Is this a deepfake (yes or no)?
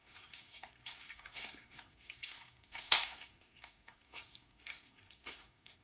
yes